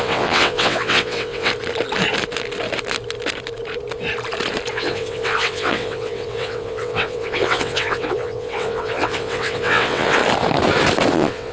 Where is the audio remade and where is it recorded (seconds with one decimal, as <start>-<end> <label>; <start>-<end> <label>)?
0.0-1.5 remade; 1.5-4.7 recorded; 4.7-10.2 remade; 10.2-11.1 recorded; 11.1-11.5 remade